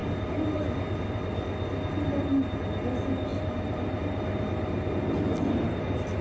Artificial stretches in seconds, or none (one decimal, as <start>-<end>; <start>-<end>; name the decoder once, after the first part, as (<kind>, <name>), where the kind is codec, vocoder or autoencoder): none